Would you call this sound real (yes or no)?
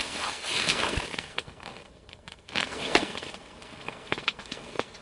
no